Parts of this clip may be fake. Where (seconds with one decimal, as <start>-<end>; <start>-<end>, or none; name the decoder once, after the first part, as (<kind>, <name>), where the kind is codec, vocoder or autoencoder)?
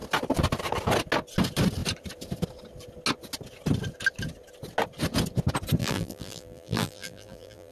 5.8-7.7 (vocoder, BigVGAN v2)